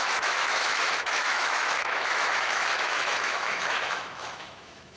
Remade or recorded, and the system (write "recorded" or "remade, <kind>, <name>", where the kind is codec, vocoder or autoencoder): remade, autoencoder, DAC-VAE